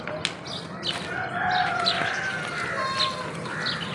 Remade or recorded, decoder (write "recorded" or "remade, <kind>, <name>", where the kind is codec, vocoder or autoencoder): recorded